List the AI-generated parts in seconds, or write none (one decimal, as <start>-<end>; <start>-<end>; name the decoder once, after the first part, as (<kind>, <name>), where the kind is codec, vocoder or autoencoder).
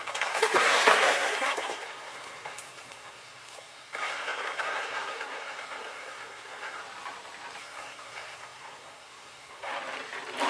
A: 0.0-6.8 (codec, SNAC); 7.6-9.7